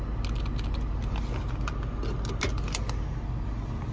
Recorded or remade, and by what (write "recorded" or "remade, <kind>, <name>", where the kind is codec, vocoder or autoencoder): recorded